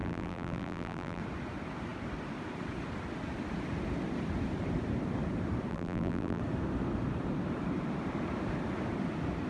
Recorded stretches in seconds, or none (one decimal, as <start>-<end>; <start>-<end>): 1.2-5.7; 6.4-9.5